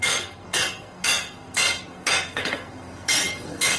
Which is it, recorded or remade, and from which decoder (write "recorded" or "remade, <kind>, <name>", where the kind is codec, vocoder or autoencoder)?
remade, codec, SNAC